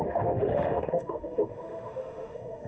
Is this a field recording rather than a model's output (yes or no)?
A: no